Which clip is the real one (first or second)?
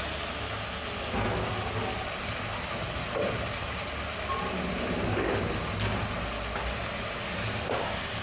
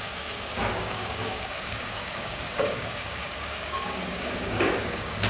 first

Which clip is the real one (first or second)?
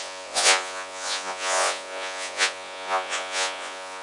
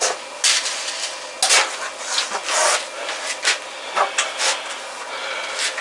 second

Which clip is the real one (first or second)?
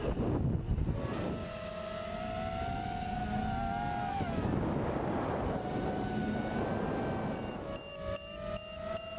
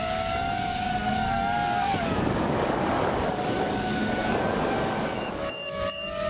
first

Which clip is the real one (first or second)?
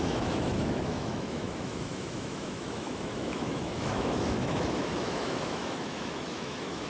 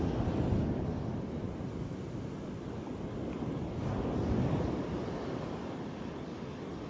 second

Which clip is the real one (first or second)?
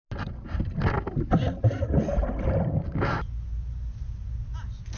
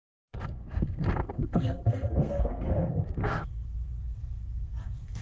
first